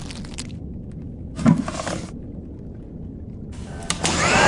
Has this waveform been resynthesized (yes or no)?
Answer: no